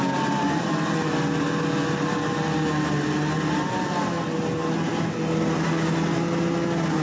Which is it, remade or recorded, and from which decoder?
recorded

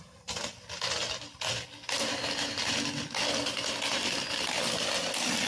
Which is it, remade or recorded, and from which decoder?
recorded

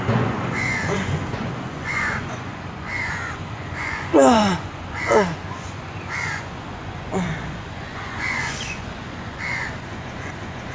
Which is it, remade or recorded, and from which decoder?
remade, vocoder, Vocos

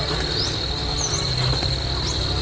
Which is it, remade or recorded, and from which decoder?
recorded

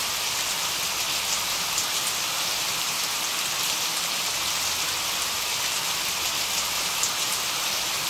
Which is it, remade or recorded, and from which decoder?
recorded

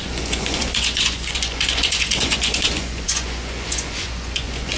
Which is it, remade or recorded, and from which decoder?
remade, vocoder, Vocos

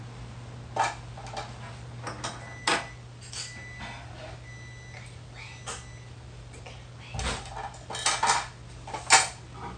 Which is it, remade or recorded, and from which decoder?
recorded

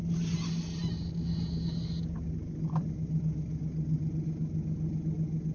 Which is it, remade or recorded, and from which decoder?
recorded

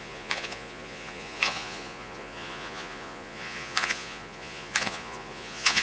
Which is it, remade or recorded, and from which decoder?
remade, vocoder, Vocos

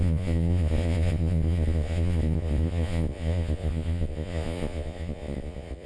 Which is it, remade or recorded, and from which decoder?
remade, vocoder, Vocos